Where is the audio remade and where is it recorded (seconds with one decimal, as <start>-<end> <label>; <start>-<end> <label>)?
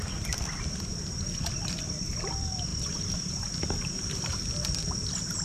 0.0-5.4 remade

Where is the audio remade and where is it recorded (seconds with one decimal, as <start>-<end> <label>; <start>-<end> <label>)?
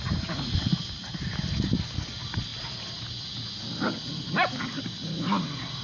0.0-5.8 recorded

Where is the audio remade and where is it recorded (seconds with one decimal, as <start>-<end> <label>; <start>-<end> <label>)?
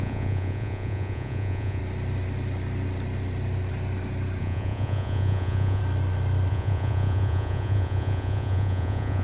0.0-1.8 remade; 1.8-4.4 recorded; 4.4-5.8 remade; 5.8-6.5 recorded; 6.5-9.2 remade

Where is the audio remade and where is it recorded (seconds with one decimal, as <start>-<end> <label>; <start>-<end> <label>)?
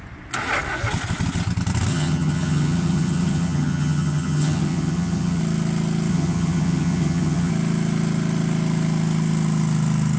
0.0-1.9 recorded; 1.9-5.4 remade; 5.4-6.1 recorded; 6.1-7.5 remade; 7.5-10.2 recorded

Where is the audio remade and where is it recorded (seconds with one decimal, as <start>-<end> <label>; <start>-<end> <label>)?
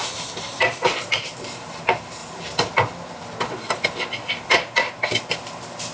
0.0-2.2 remade; 2.2-4.5 recorded; 4.5-5.9 remade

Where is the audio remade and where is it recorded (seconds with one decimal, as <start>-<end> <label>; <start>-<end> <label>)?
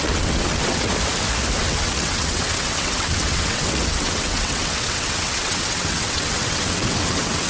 0.0-0.9 remade; 0.9-1.6 recorded; 1.6-7.5 remade